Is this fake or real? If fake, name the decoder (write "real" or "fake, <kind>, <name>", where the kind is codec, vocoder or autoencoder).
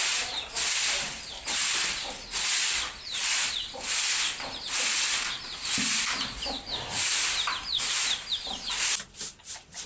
real